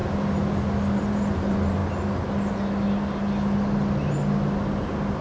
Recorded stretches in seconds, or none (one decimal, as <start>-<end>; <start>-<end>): 0.0-1.0; 1.8-5.2

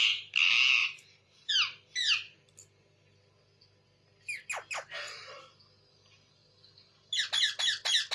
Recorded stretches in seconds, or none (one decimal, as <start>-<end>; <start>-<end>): 0.0-0.8; 1.5-8.1

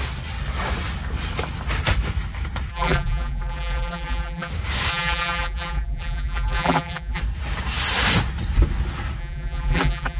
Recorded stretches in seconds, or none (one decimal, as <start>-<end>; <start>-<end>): 0.0-2.7; 4.5-4.9; 7.2-9.2

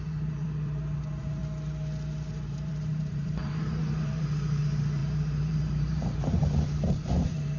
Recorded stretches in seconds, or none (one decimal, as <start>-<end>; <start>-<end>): 1.4-2.3

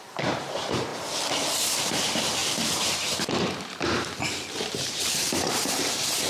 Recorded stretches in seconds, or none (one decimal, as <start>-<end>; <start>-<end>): 0.9-1.8